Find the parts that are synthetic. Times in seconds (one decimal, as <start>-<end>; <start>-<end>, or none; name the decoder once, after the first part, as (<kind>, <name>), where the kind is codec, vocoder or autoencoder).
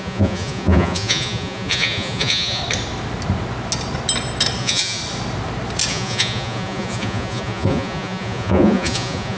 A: 0.0-2.6 (vocoder, Vocos); 4.6-5.0; 5.9-9.4